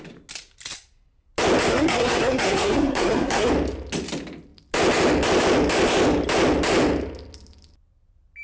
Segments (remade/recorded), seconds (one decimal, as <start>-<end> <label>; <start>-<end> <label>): 0.0-1.7 recorded; 1.7-3.5 remade; 3.5-8.4 recorded